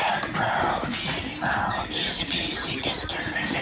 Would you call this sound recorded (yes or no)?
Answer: yes